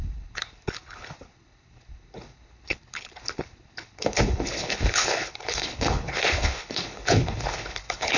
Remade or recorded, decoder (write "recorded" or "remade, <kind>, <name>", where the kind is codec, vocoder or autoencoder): remade, codec, HILCodec